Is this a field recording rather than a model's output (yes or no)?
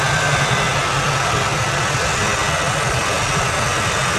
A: yes